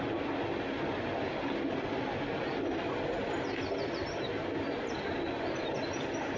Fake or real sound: real